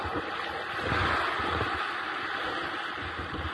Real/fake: real